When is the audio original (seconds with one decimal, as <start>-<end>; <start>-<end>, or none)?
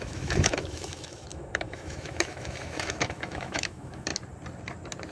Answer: 4.1-5.1